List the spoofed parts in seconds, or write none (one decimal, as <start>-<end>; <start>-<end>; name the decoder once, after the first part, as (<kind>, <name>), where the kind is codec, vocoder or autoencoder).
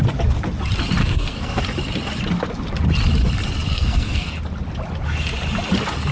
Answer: 1.0-1.6 (codec, SNAC); 3.7-4.3